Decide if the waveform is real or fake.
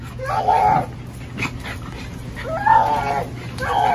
real